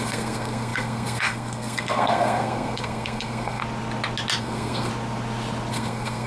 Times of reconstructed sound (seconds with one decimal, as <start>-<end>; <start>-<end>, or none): 0.0-3.6; 4.4-4.9; 5.7-6.3